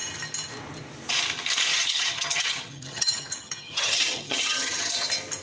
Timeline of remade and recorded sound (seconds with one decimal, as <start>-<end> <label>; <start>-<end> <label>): 0.0-1.7 recorded; 1.7-4.9 remade; 4.9-5.4 recorded